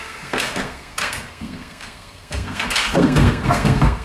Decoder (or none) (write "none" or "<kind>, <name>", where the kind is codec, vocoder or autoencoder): codec, SNAC